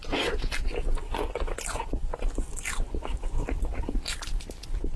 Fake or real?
real